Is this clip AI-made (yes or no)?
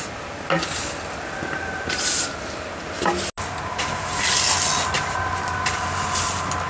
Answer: no